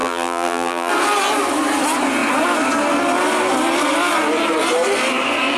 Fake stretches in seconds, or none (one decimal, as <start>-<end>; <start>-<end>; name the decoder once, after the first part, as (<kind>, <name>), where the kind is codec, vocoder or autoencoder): 0.0-0.9 (vocoder, BigVGAN v2)

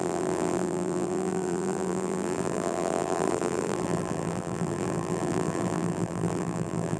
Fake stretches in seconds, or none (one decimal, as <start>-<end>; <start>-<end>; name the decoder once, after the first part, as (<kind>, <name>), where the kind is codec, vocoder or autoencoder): 0.0-7.0 (vocoder, BigVGAN v2)

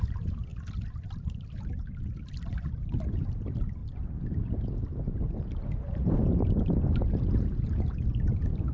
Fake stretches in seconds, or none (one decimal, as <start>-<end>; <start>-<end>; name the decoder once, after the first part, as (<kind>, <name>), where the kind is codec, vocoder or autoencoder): none

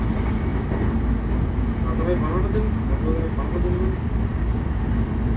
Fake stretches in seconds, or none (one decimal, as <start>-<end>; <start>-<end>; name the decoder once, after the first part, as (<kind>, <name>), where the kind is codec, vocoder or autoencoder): 0.0-0.5 (vocoder, BigVGAN v2); 3.7-5.4

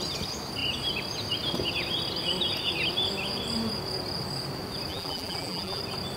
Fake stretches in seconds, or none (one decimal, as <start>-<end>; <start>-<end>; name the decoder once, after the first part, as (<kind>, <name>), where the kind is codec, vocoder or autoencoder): 4.9-5.8 (vocoder, BigVGAN v2)